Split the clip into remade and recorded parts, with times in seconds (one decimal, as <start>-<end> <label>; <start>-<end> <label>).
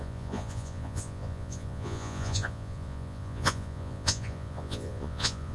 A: 0.0-5.5 remade